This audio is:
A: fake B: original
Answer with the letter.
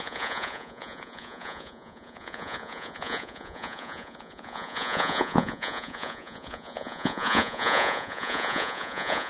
A